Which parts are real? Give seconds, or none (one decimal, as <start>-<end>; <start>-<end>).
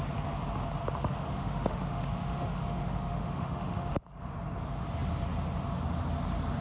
0.0-1.0; 3.9-6.6